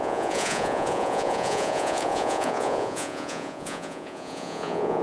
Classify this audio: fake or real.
fake